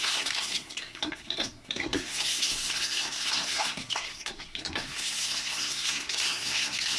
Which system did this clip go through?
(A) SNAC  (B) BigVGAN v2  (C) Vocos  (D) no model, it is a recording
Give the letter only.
A